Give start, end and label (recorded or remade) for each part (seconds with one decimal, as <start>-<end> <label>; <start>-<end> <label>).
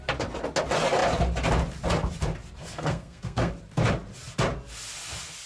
0.0-2.6 recorded; 2.6-3.5 remade; 3.5-5.5 recorded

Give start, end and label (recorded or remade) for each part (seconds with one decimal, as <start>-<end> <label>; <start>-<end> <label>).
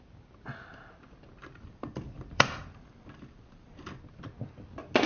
0.0-1.4 recorded; 1.4-4.0 remade; 4.0-5.1 recorded